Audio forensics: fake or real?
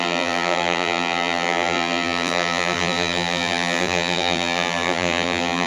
fake